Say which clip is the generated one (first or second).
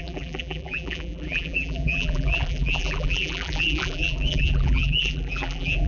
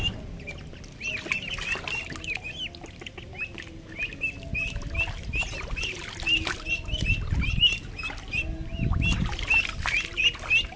first